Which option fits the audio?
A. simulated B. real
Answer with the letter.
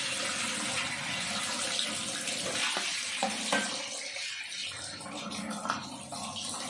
B